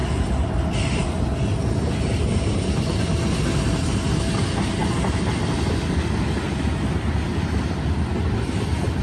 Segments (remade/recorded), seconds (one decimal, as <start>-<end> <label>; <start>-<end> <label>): 0.0-9.0 recorded